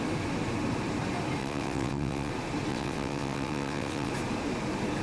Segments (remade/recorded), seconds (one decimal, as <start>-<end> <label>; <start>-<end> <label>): 0.0-1.4 recorded; 1.4-2.3 remade; 2.3-2.7 recorded; 2.7-4.1 remade; 4.1-5.0 recorded